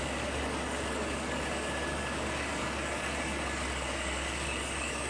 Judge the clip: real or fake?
fake